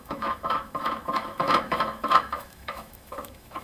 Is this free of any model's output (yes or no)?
no